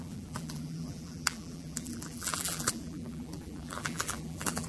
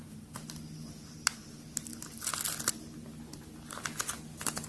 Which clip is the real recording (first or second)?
second